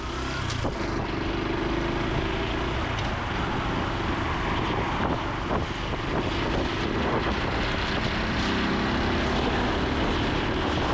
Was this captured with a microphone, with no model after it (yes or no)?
yes